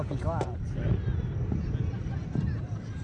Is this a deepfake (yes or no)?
no